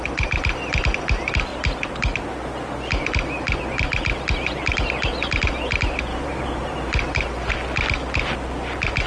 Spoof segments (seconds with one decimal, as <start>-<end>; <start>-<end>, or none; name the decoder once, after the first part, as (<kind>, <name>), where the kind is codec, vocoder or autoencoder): 6.1-7.5 (vocoder, BigVGAN v2)